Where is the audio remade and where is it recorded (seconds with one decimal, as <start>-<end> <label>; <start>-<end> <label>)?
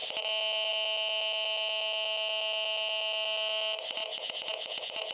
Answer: 0.0-4.0 recorded; 4.0-5.1 remade